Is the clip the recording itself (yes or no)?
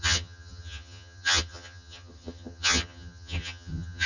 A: no